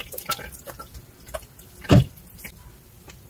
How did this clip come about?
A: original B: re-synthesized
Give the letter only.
B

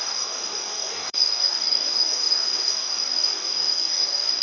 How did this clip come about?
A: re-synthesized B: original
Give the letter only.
A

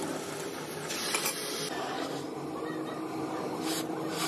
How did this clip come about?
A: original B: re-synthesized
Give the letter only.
A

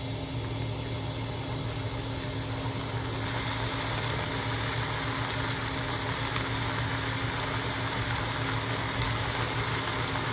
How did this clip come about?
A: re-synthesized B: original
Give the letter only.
B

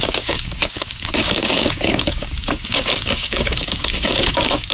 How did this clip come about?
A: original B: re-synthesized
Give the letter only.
B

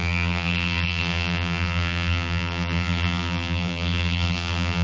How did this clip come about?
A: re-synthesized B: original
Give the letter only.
A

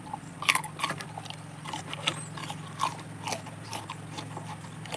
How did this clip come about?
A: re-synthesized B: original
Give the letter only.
B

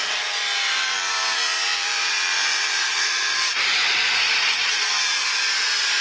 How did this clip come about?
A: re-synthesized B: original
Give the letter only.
A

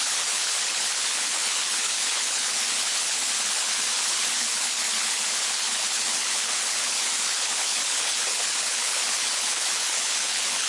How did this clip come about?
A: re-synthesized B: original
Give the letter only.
A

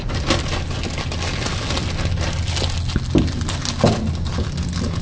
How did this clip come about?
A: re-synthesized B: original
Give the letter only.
B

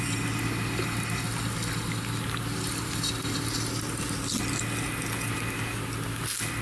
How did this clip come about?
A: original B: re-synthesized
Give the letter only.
A